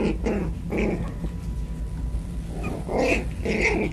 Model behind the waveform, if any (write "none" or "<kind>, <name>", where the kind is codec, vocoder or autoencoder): none